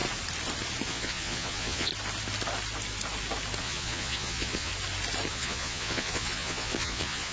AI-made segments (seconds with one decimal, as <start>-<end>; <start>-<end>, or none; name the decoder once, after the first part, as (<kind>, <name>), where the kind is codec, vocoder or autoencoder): 0.9-1.9 (vocoder, Vocos); 3.6-4.7; 5.3-7.3